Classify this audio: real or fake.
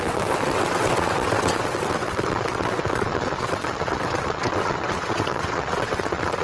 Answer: fake